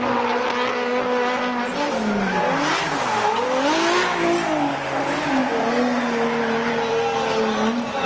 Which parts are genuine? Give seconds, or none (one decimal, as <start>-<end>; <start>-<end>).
0.0-8.1